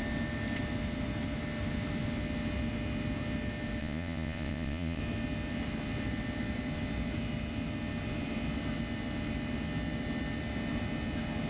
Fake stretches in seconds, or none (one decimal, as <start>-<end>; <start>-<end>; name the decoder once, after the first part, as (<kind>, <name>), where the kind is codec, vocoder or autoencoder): 3.8-5.0 (vocoder, Vocos)